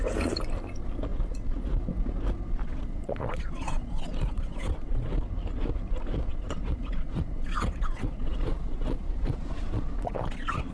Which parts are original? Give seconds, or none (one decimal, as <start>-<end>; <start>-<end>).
0.0-2.6; 5.1-6.3